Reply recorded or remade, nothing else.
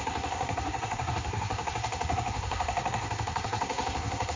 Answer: remade